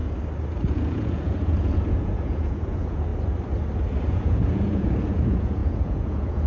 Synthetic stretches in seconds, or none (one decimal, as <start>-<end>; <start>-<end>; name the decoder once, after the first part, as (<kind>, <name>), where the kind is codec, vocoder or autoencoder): 0.7-3.1 (vocoder, Vocos); 4.1-6.5